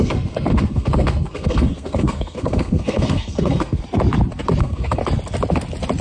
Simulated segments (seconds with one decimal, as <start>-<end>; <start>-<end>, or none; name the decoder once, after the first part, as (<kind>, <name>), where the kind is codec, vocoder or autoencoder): 0.0-3.8 (codec, SNAC); 4.6-5.0